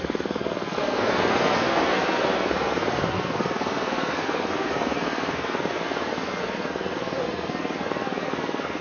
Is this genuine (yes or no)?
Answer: no